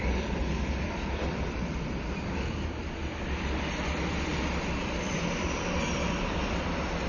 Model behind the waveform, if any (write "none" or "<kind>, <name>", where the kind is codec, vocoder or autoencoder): vocoder, BigVGAN v2